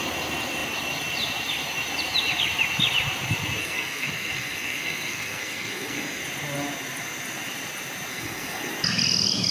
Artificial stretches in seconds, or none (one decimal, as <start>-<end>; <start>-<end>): 3.6-6.2; 8.1-8.7